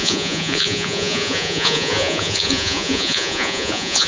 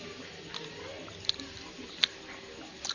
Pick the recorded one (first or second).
second